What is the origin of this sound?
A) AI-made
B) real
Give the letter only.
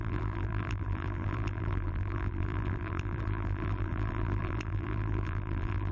A